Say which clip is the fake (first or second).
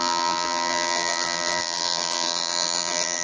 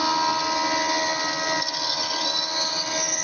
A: first